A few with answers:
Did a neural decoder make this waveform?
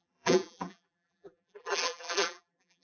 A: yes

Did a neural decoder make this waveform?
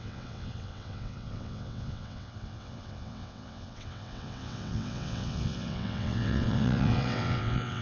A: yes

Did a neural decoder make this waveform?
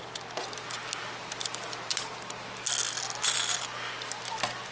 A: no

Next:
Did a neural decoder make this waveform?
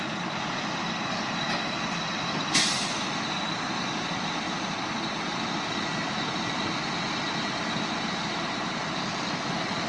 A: yes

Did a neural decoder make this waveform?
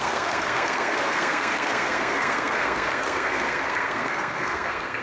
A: yes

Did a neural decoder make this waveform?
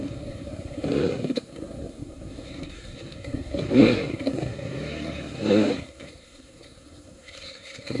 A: yes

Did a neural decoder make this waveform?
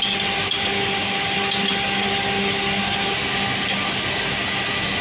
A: no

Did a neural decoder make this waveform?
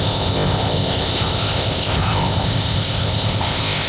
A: yes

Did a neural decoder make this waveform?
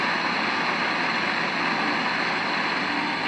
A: no